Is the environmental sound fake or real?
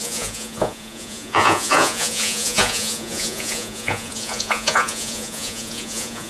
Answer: fake